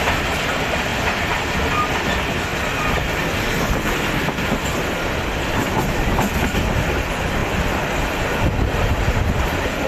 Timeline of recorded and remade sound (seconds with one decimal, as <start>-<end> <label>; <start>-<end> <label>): 0.0-9.9 recorded